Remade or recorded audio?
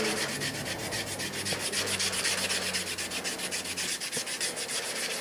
recorded